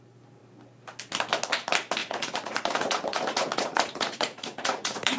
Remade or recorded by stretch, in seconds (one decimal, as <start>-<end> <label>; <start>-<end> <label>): 0.0-2.0 recorded; 2.0-5.2 remade